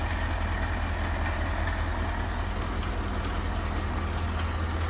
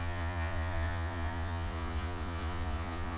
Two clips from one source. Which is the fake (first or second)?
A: second